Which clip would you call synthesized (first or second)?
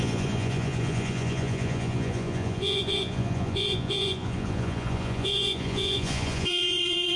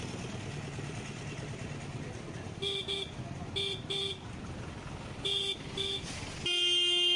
first